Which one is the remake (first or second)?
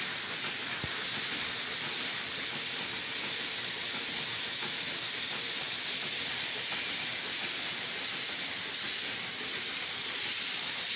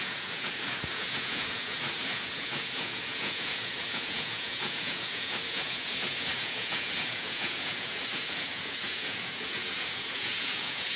second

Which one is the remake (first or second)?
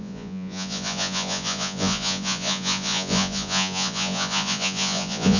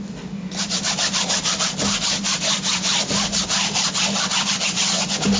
first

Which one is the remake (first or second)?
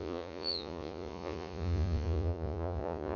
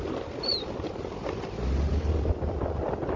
first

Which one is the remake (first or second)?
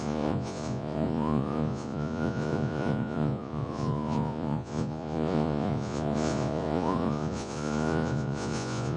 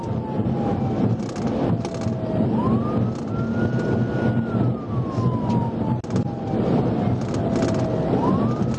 first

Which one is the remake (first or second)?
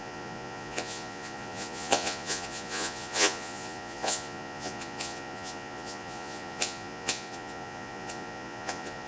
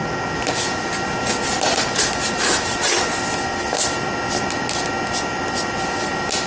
first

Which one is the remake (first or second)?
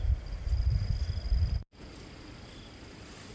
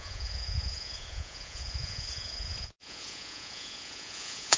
second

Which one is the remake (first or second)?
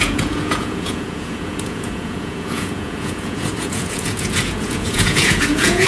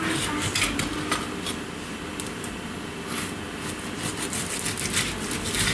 first